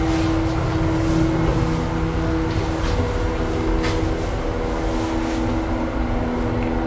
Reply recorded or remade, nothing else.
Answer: recorded